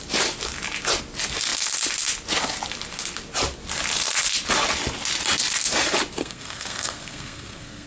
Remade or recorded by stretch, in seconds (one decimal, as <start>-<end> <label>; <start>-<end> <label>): 0.0-6.2 recorded; 6.2-7.9 remade